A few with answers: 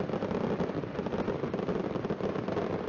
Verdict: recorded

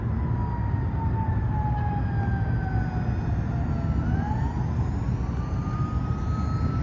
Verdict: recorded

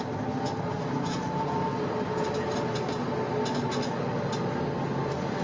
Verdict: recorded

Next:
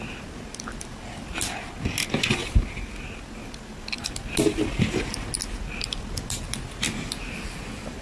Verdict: recorded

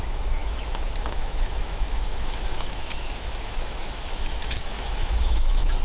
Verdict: remade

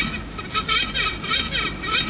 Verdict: recorded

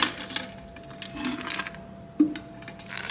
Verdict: recorded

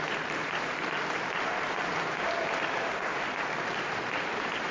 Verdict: remade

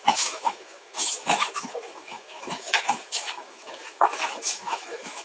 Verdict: remade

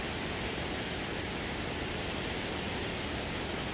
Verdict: recorded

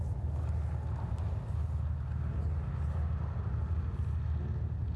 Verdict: recorded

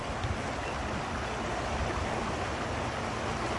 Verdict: recorded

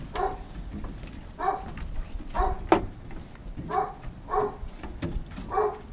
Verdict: recorded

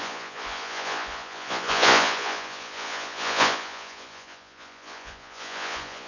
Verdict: remade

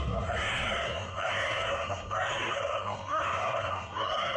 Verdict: remade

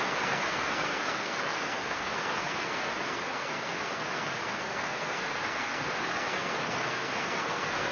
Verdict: remade